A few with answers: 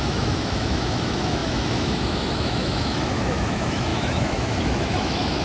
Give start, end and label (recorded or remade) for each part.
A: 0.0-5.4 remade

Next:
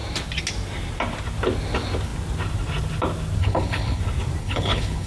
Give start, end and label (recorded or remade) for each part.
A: 0.0-3.4 recorded; 3.4-4.0 remade; 4.0-4.4 recorded; 4.4-5.1 remade

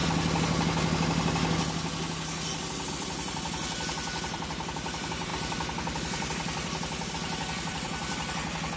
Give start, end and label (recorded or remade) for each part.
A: 0.0-2.9 recorded; 2.9-8.8 remade

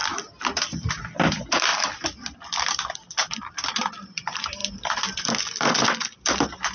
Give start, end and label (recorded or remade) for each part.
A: 0.0-0.9 recorded; 0.9-1.7 remade; 1.7-2.6 recorded; 2.6-6.7 remade